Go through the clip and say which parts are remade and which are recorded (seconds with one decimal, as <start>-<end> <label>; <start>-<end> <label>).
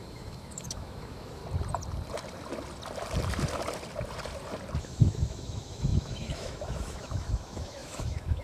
0.0-1.4 remade; 1.4-4.8 recorded; 4.8-8.4 remade